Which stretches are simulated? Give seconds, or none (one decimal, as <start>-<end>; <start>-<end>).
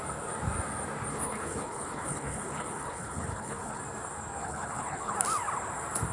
1.1-3.8; 4.4-5.1